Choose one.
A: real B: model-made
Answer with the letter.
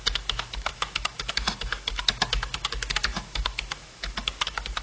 B